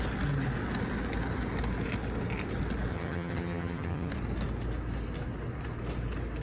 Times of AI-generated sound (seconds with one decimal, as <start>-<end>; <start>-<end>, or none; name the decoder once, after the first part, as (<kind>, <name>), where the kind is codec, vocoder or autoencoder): 2.9-4.1 (vocoder, HiFi-GAN)